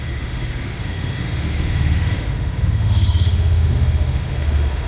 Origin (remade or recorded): remade